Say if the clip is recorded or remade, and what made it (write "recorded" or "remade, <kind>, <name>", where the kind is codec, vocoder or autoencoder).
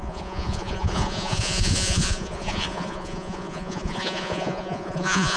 remade, vocoder, Vocos